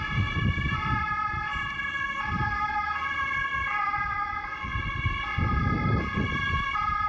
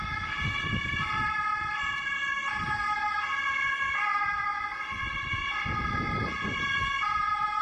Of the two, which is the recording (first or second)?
second